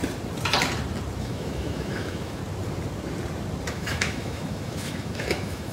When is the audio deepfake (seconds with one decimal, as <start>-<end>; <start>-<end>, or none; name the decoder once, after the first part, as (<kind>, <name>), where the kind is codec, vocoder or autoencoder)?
1.2-2.4 (autoencoder, DAC-VAE); 3.7-5.7